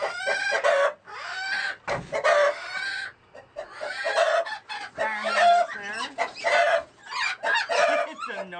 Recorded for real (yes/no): yes